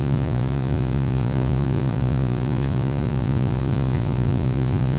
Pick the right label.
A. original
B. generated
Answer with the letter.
B